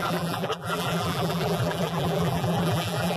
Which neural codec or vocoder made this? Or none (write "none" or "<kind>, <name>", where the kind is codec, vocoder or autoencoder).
vocoder, BigVGAN v2